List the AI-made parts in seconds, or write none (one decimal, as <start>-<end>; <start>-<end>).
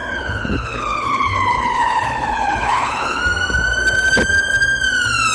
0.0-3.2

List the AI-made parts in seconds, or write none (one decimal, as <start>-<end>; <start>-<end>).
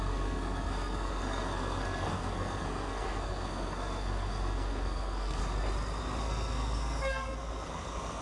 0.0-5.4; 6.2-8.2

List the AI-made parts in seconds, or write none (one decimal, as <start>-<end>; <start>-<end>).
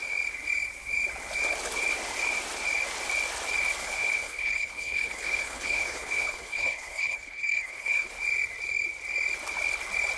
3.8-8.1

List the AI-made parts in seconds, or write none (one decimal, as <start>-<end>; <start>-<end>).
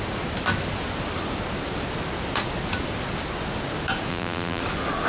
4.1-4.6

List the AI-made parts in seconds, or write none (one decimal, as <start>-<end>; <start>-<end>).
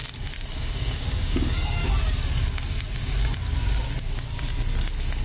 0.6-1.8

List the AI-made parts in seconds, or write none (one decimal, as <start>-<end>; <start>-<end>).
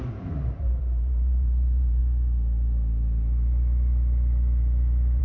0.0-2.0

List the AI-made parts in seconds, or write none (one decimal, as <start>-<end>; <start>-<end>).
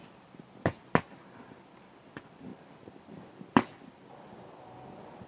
0.0-0.8; 2.5-4.6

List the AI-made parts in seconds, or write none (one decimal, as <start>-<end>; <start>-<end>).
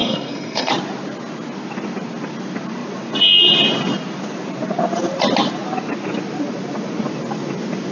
0.0-0.7